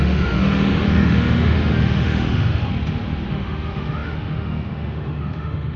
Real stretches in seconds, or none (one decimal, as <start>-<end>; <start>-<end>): 2.7-3.3